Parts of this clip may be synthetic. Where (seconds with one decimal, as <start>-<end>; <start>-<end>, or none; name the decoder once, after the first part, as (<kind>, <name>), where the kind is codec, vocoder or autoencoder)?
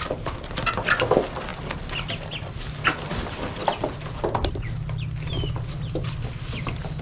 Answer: none